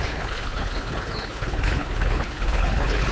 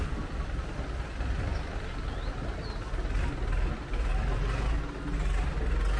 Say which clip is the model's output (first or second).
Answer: first